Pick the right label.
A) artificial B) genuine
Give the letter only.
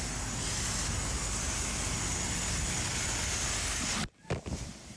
B